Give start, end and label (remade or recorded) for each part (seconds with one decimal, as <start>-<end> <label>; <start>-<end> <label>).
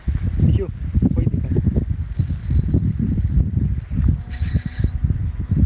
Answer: 0.0-5.7 recorded